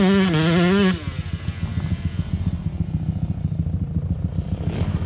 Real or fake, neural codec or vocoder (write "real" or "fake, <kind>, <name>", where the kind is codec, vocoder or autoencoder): real